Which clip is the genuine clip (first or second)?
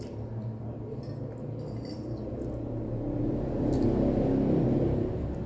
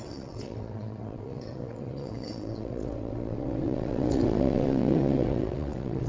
first